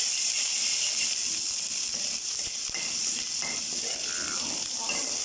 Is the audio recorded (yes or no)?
yes